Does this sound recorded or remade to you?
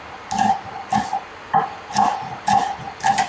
recorded